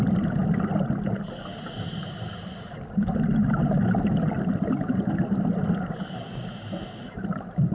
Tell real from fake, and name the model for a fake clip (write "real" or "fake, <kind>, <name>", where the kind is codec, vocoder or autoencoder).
real